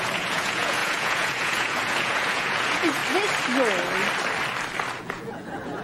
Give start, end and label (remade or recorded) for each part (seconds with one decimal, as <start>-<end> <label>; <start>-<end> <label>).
0.0-3.0 remade; 3.0-5.0 recorded; 5.0-5.8 remade